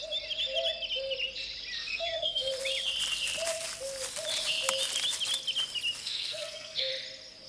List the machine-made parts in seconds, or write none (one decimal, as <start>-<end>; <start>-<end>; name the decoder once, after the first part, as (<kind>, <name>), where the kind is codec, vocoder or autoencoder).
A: 1.9-2.5 (codec, SNAC); 6.0-6.9